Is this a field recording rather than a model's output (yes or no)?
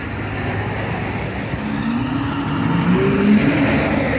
yes